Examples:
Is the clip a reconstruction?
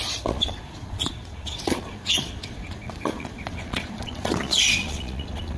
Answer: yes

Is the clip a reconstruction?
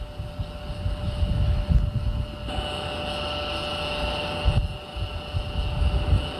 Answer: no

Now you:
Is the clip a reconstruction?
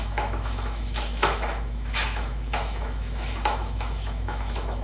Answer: yes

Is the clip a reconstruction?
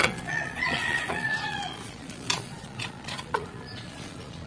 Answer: yes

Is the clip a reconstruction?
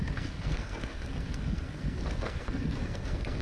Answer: yes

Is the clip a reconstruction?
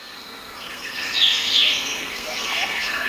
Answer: yes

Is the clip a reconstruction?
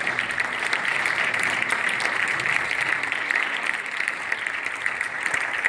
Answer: yes